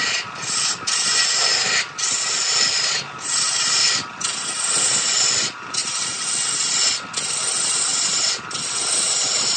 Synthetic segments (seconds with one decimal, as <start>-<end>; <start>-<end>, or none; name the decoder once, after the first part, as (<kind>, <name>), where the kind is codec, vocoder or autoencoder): none